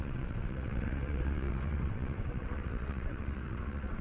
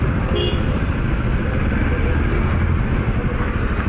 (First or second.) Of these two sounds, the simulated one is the first